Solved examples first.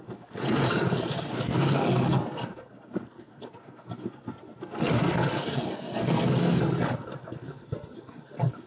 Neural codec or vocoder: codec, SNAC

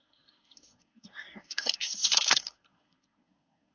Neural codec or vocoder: codec, SNAC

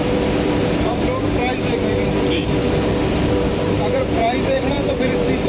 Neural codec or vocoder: vocoder, BigVGAN v2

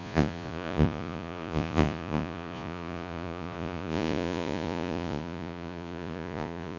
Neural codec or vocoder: vocoder, Vocos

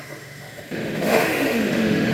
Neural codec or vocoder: autoencoder, DAC-VAE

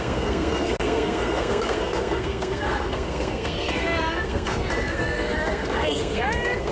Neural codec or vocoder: codec, SNAC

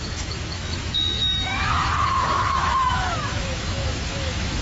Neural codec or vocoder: autoencoder, DAC-VAE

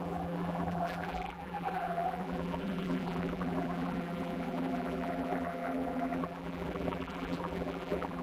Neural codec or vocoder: vocoder, BigVGAN v2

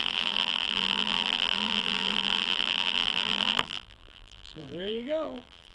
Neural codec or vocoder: vocoder, BigVGAN v2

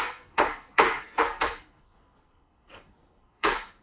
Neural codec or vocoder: codec, SNAC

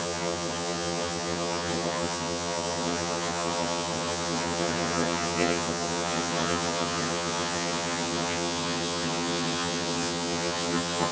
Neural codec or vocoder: vocoder, HiFi-GAN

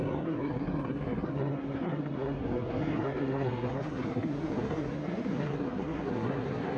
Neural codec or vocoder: codec, SNAC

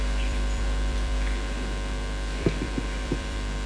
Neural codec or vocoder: vocoder, BigVGAN v2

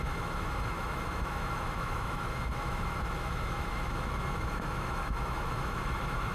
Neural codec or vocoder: autoencoder, DAC-VAE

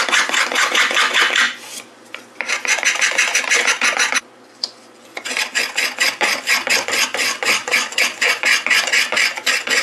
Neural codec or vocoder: vocoder, Vocos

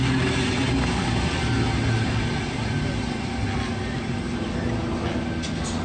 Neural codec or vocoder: none